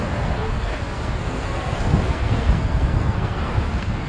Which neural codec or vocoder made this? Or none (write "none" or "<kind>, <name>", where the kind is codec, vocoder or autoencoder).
codec, SNAC